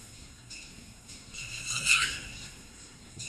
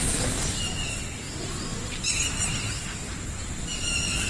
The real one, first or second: second